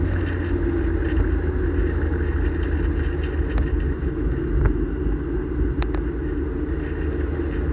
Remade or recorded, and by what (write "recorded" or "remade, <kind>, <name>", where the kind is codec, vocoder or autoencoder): recorded